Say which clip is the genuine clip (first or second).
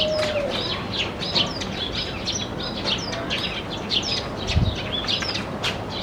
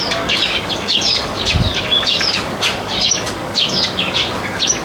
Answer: first